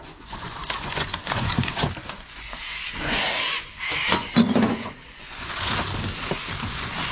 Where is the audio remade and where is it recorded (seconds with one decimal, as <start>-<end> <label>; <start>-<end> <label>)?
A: 0.0-5.7 remade; 5.7-6.6 recorded; 6.6-7.1 remade

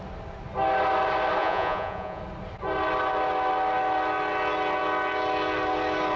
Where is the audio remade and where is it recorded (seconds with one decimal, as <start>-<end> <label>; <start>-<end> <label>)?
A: 0.0-1.4 recorded; 1.4-2.2 remade; 2.2-6.2 recorded

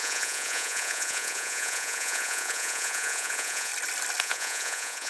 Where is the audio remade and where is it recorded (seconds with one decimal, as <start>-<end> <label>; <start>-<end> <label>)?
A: 0.0-3.7 remade; 3.7-4.2 recorded; 4.2-5.1 remade

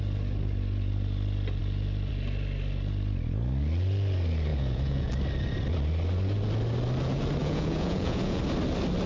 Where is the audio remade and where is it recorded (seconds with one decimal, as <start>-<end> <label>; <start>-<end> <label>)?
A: 0.0-4.5 recorded; 4.5-5.1 remade; 5.1-7.4 recorded; 7.4-8.4 remade; 8.4-9.1 recorded

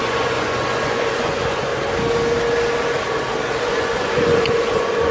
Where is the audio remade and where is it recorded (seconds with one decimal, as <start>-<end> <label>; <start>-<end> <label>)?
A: 0.0-1.7 remade; 1.7-3.6 recorded; 3.6-5.1 remade